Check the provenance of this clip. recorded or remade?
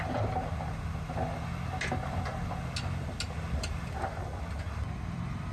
recorded